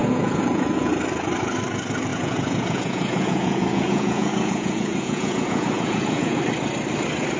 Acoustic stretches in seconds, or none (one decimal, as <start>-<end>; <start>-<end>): 0.9-2.1; 6.4-7.4